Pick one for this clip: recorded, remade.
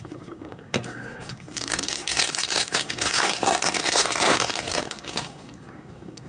remade